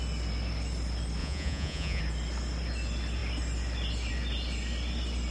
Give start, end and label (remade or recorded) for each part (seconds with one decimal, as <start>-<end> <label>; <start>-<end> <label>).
0.0-1.2 recorded; 1.2-2.0 remade; 2.0-5.3 recorded